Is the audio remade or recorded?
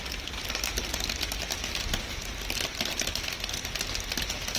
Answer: recorded